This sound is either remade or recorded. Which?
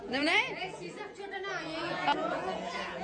remade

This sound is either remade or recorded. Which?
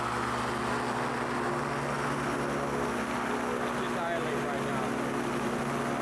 recorded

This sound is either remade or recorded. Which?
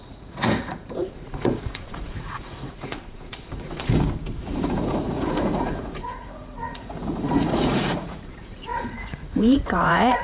remade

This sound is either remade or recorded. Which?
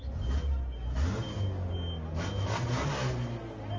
recorded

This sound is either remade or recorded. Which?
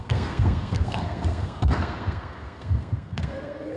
remade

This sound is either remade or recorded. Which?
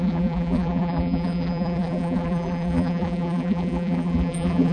remade